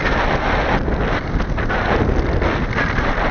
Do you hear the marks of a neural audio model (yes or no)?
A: no